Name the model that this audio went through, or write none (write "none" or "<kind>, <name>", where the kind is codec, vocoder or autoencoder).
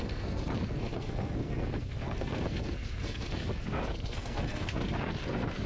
codec, SNAC